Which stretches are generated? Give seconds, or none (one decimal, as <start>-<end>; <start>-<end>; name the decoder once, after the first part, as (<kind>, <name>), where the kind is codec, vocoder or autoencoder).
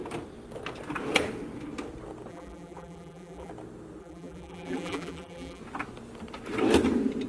2.3-3.5 (vocoder, BigVGAN v2); 4.0-5.6